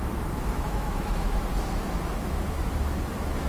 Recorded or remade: remade